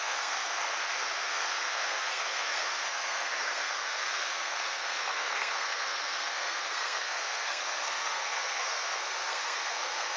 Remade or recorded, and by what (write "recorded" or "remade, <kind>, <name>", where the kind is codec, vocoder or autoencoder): remade, codec, SNAC